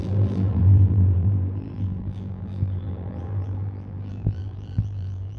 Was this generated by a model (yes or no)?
yes